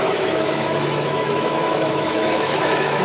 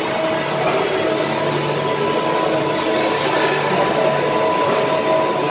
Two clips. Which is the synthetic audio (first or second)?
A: first